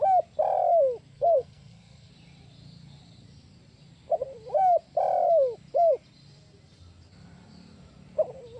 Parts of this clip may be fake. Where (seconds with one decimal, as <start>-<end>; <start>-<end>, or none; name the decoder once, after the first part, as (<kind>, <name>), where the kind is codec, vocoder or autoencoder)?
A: 1.1-2.1 (codec, SNAC)